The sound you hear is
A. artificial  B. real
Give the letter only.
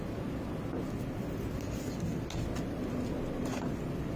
B